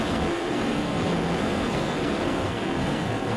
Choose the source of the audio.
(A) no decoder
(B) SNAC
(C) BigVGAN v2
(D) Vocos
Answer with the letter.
B